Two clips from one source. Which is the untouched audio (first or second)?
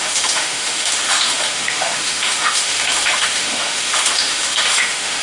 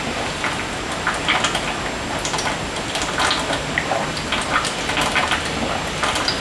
second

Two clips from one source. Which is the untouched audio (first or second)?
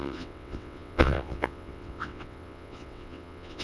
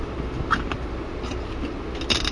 second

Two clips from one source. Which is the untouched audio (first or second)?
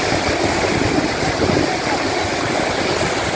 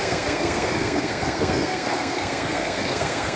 first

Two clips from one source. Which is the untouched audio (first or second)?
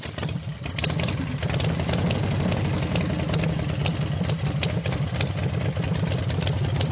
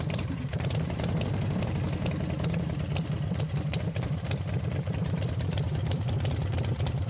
first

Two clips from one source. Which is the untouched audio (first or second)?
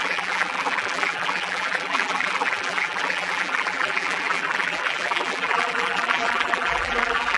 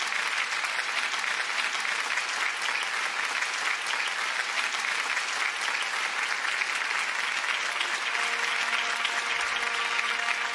second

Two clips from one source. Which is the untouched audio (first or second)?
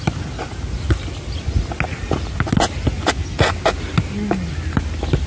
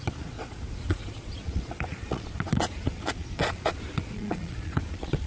first